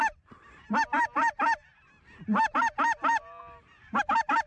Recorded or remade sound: recorded